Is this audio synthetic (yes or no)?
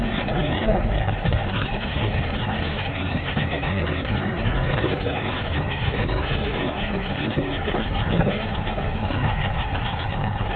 yes